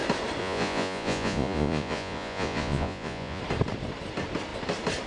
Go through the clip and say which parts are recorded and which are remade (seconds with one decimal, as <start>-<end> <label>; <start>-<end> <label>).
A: 0.0-0.4 recorded; 0.4-3.4 remade; 3.4-5.1 recorded